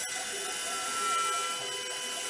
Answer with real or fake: real